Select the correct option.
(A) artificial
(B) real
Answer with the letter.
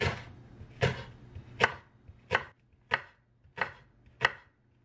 B